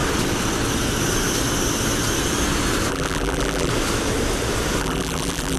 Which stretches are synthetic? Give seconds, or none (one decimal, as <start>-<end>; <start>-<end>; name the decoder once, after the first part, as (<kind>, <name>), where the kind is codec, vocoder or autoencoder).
2.9-3.7 (vocoder, BigVGAN v2); 4.8-5.6